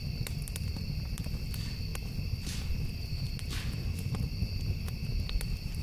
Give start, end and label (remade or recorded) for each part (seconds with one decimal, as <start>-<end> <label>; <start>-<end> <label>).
0.0-5.8 recorded